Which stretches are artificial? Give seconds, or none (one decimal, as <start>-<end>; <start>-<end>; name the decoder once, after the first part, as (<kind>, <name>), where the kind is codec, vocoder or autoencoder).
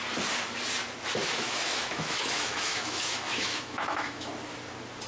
1.2-4.3 (autoencoder, DAC-VAE)